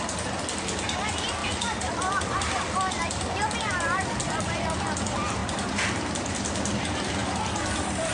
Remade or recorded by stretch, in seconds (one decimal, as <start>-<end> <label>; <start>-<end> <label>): 0.0-1.4 recorded; 1.4-4.8 remade; 4.8-8.1 recorded